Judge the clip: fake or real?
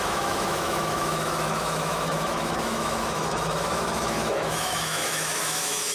fake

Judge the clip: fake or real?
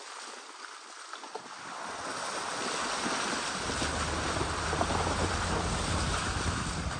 real